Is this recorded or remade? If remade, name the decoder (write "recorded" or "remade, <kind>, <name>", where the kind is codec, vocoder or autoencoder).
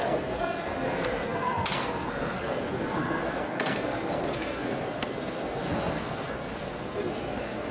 remade, codec, SNAC